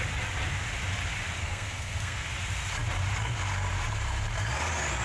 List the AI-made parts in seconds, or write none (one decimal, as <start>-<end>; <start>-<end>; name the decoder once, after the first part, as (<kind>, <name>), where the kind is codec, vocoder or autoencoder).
1.4-2.3 (codec, SNAC)